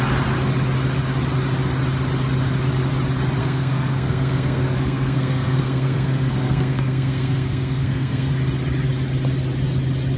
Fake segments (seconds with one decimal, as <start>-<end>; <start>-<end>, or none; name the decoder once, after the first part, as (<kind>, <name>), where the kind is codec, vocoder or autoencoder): 3.4-8.3 (codec, SNAC)